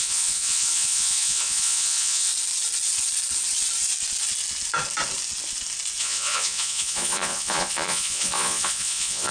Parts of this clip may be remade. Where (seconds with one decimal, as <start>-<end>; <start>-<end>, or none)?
0.0-2.3; 6.0-9.3